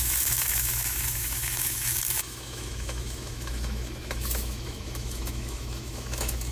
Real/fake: fake